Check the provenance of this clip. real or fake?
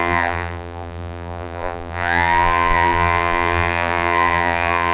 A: fake